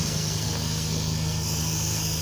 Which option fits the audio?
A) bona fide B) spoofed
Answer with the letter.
B